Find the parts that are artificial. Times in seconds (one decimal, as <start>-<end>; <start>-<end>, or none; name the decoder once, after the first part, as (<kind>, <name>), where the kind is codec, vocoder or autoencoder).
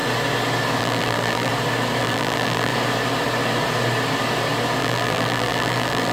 0.8-1.5 (vocoder, BigVGAN v2); 2.0-2.7; 4.8-6.1